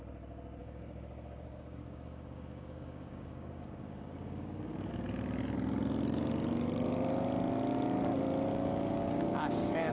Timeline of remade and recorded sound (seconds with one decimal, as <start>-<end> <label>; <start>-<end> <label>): 0.0-0.6 recorded; 0.6-4.9 remade; 4.9-8.5 recorded; 8.5-9.9 remade